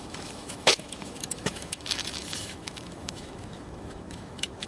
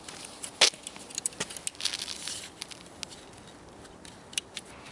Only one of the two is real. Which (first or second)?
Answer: second